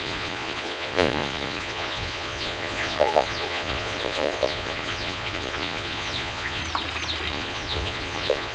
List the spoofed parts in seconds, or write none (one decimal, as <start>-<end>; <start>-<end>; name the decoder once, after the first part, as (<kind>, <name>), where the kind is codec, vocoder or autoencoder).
0.0-6.6 (vocoder, Vocos); 7.3-8.5